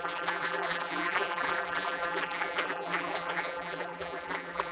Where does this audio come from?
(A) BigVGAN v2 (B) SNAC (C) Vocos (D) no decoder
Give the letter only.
A